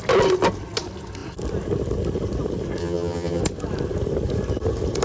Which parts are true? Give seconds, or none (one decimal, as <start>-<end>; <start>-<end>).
0.0-2.8; 3.4-5.0